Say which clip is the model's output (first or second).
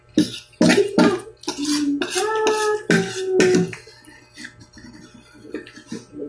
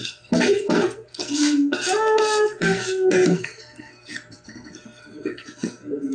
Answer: second